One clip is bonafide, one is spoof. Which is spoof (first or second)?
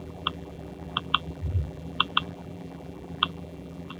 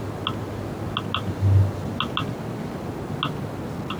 first